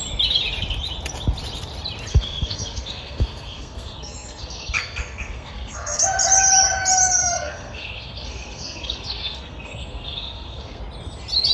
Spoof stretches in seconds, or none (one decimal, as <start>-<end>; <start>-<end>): 2.1-6.0; 7.2-10.8